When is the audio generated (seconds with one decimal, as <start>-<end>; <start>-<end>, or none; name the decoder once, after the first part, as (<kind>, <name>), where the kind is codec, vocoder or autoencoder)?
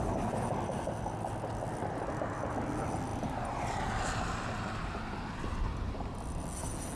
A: none